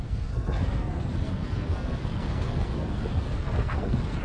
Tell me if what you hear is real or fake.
fake